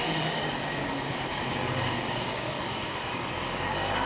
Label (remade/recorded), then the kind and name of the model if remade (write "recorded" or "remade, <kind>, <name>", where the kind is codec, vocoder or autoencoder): remade, codec, DAC